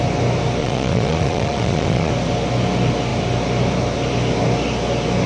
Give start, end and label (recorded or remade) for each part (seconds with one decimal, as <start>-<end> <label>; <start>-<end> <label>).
0.0-0.6 recorded; 0.6-2.1 remade; 2.1-5.3 recorded